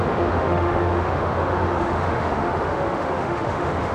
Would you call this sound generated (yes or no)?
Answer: yes